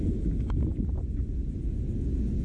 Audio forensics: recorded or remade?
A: recorded